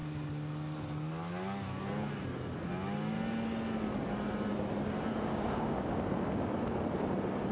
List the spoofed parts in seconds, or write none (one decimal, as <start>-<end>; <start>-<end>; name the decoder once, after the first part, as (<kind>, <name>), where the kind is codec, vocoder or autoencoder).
5.3-5.9 (codec, DAC)